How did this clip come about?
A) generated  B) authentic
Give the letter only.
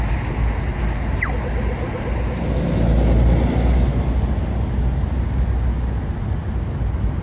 B